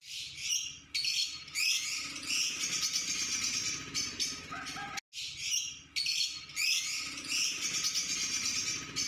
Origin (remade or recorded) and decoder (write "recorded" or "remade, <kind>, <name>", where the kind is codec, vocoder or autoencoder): recorded